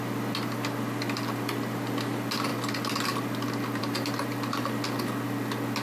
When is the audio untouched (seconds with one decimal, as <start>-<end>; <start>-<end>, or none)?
0.0-5.8